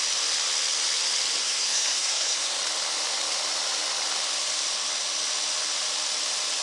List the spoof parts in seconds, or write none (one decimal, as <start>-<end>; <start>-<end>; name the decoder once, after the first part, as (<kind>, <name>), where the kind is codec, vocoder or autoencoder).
1.4-2.6 (codec, SNAC)